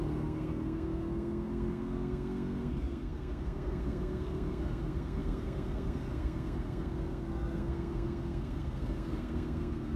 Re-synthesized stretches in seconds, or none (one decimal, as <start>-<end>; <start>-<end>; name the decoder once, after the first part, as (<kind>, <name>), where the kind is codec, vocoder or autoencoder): 0.0-10.0 (codec, SNAC)